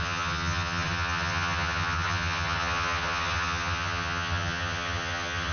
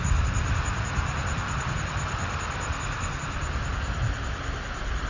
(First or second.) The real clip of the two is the second